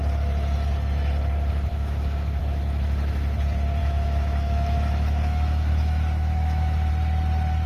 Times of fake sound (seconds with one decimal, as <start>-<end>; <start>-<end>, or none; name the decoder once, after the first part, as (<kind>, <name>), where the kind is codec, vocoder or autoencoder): 1.7-2.4 (autoencoder, DAC-VAE); 3.8-6.9